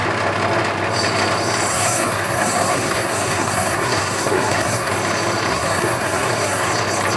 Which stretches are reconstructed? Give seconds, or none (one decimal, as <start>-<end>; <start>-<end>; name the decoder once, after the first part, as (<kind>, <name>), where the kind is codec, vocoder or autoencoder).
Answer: 1.7-4.9 (codec, SNAC); 5.5-6.7